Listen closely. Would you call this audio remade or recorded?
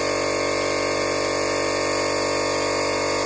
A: recorded